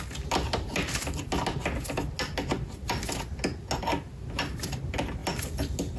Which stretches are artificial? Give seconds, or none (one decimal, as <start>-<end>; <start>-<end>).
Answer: none